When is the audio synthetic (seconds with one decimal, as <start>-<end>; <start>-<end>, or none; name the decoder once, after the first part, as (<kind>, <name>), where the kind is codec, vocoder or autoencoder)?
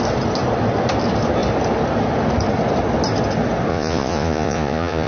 3.7-5.1 (vocoder, Vocos)